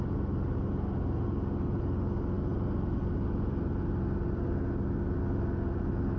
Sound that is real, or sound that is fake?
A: real